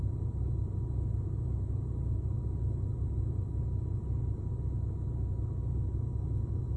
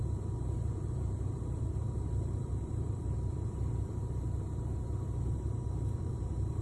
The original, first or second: first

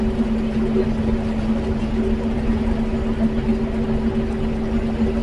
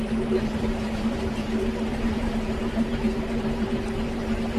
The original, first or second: first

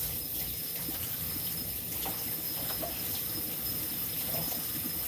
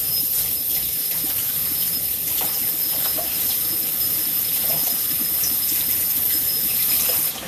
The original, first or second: first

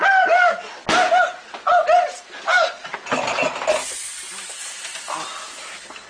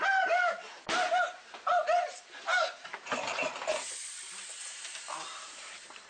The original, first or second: first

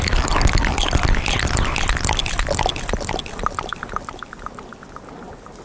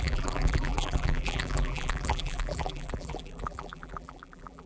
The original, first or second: first